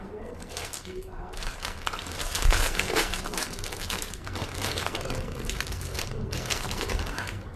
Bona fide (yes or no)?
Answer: no